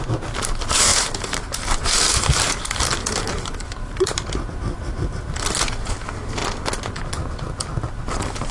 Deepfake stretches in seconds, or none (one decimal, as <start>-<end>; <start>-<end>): 0.9-1.8; 3.8-5.4